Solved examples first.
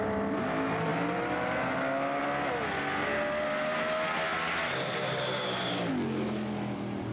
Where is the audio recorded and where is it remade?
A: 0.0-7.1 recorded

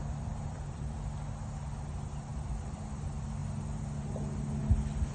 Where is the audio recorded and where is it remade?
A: 0.0-0.9 remade; 0.9-2.3 recorded; 2.3-2.8 remade; 2.8-5.1 recorded

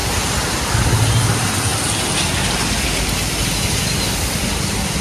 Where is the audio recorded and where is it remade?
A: 0.0-5.0 recorded

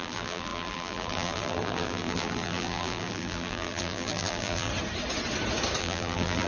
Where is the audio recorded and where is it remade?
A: 0.0-4.7 remade; 4.7-5.8 recorded; 5.8-6.5 remade

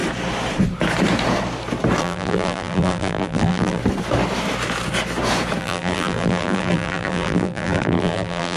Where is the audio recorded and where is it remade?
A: 0.0-2.0 recorded; 2.0-3.8 remade; 3.8-5.6 recorded; 5.6-8.6 remade

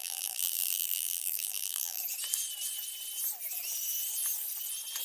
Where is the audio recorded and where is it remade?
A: 0.0-2.0 remade; 2.0-5.0 recorded

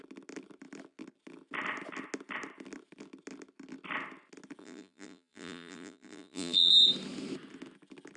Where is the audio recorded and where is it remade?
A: 0.0-4.6 recorded; 4.6-6.7 remade; 6.7-8.2 recorded

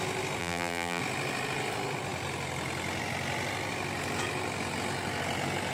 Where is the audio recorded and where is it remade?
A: 0.0-0.4 recorded; 0.4-1.0 remade; 1.0-5.7 recorded